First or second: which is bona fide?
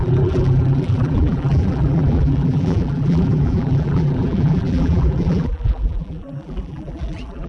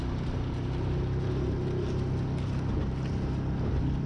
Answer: second